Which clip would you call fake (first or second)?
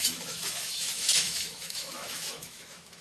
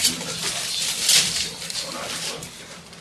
first